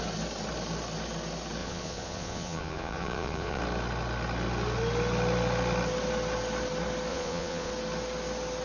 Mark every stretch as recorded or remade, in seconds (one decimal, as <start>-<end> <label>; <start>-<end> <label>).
0.0-1.6 recorded; 1.6-3.6 remade; 3.6-7.1 recorded; 7.1-7.7 remade; 7.7-8.6 recorded